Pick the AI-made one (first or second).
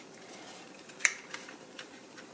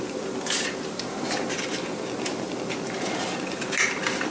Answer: first